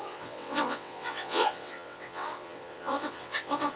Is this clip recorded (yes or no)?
no